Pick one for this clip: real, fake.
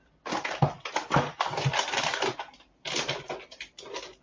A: fake